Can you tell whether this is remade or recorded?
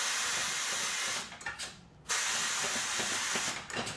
recorded